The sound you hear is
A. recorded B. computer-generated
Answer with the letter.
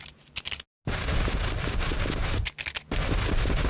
A